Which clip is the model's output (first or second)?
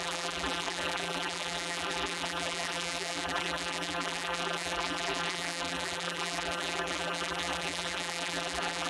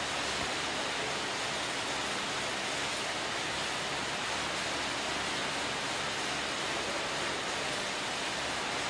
first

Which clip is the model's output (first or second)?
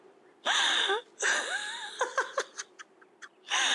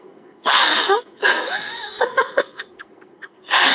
second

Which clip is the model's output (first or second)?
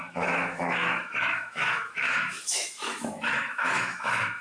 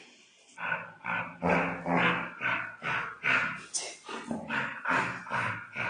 first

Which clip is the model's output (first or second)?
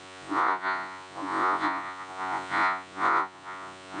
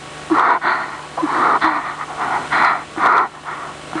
first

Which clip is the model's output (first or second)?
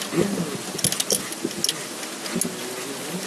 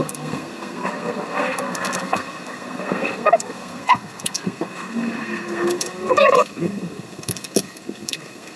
second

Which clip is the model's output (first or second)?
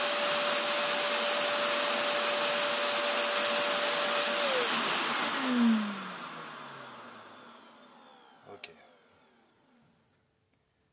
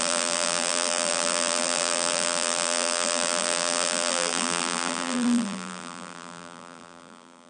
second